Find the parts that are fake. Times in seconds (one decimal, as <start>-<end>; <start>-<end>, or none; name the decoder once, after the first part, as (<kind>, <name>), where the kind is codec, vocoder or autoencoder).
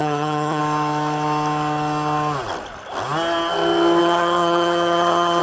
0.0-0.6 (vocoder, HiFi-GAN); 4.0-5.4